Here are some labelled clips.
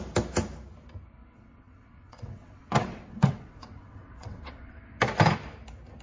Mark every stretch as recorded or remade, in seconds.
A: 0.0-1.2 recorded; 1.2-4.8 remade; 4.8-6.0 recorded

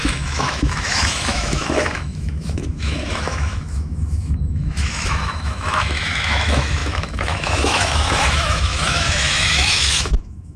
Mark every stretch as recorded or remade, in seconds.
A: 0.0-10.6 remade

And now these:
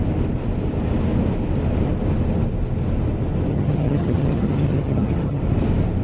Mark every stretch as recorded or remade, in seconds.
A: 0.0-3.5 recorded; 3.5-5.4 remade; 5.4-6.0 recorded

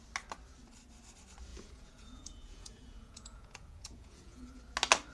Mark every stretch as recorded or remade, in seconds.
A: 0.0-1.5 recorded; 1.5-4.6 remade; 4.6-5.1 recorded

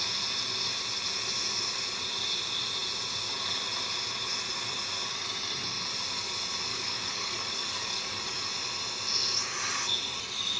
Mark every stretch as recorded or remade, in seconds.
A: 0.0-6.7 recorded; 6.7-8.5 remade; 8.5-10.6 recorded

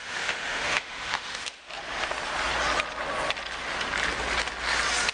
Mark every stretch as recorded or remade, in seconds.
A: 0.0-1.6 remade; 1.6-5.1 recorded